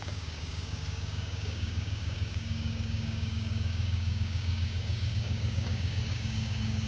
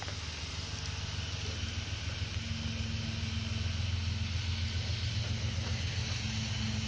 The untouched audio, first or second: second